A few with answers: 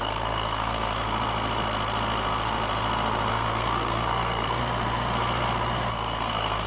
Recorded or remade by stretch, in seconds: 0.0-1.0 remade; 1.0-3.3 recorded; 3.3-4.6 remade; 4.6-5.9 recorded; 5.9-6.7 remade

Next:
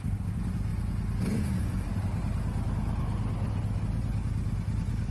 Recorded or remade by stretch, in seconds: 0.0-5.1 recorded

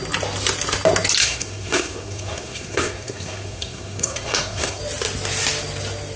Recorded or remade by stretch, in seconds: 0.0-1.2 recorded; 1.2-4.8 remade; 4.8-6.2 recorded

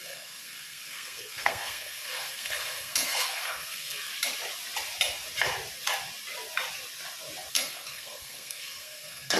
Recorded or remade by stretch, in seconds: 0.0-4.1 remade; 4.1-7.5 recorded; 7.5-9.4 remade